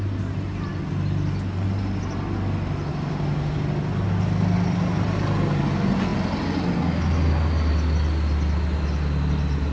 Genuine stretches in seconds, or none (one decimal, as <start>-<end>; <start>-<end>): 0.0-9.7